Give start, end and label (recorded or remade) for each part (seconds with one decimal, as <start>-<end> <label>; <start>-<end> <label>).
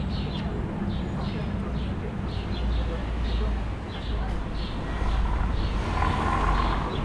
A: 0.0-7.0 recorded